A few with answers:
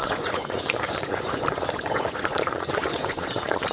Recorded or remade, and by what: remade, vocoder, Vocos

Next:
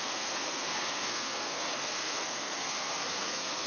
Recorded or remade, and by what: remade, codec, SNAC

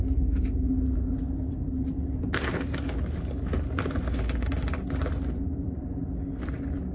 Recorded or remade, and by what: recorded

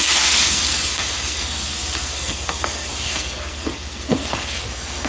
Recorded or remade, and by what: remade, codec, SNAC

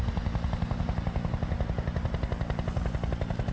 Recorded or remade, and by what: recorded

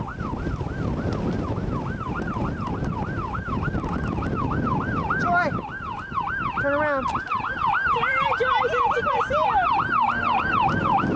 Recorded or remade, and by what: recorded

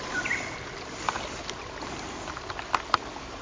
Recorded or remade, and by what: recorded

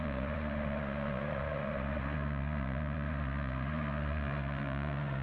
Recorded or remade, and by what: remade, vocoder, Vocos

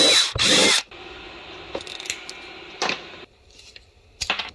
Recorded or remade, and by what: recorded